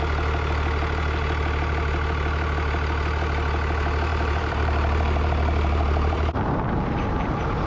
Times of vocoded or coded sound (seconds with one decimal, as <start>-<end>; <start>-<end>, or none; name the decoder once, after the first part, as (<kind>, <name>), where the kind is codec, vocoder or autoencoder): 4.1-7.7 (vocoder, BigVGAN v2)